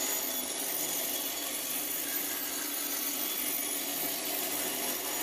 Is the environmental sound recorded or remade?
recorded